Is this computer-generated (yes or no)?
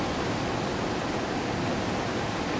no